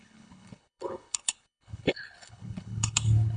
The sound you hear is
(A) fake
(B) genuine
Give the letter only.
A